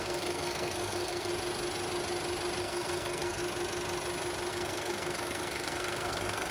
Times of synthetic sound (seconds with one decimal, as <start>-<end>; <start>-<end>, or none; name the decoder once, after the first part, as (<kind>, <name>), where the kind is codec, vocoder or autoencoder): 0.0-1.3 (codec, SNAC); 2.6-3.4; 4.5-6.5